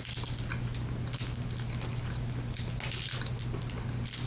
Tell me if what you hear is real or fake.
real